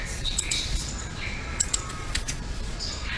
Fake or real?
fake